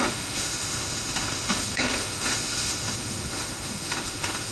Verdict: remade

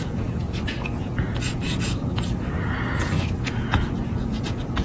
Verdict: remade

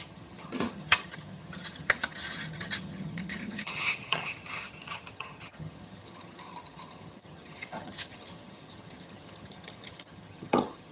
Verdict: remade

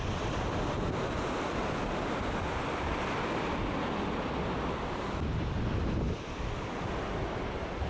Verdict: recorded